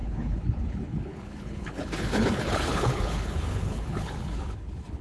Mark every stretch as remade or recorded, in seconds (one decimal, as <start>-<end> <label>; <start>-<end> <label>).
0.0-5.0 remade